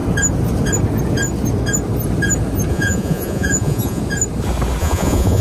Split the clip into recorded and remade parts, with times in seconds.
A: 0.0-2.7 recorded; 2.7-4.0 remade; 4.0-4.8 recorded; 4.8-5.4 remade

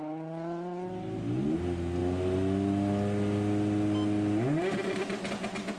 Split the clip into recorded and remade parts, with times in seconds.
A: 0.0-5.8 recorded

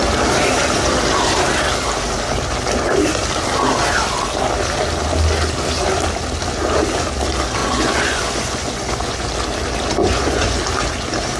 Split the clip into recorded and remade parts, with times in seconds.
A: 0.0-7.6 recorded; 7.6-9.3 remade; 9.3-10.0 recorded; 10.0-10.6 remade; 10.6-11.4 recorded

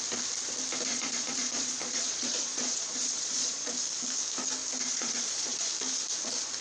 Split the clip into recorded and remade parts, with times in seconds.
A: 0.0-0.9 recorded; 0.9-3.7 remade; 3.7-4.9 recorded; 4.9-5.7 remade; 5.7-6.6 recorded

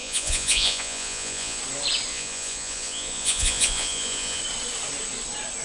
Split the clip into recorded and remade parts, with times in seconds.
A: 0.0-1.6 remade; 1.6-2.1 recorded; 2.1-4.4 remade; 4.4-5.6 recorded

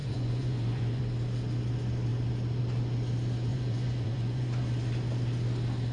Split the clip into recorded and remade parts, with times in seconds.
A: 0.0-1.0 remade; 1.0-3.5 recorded; 3.5-4.6 remade; 4.6-5.9 recorded